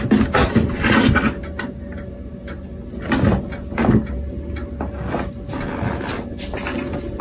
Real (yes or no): yes